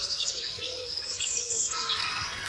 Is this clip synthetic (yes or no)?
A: yes